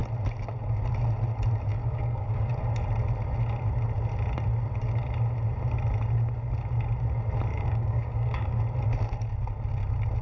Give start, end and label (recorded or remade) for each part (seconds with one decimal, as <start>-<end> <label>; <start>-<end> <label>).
0.0-1.7 recorded; 1.7-2.5 remade; 2.5-7.5 recorded; 7.5-8.6 remade; 8.6-10.2 recorded